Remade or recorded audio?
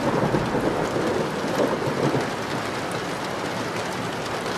recorded